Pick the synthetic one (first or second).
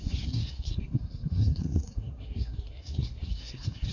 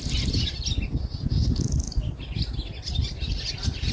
first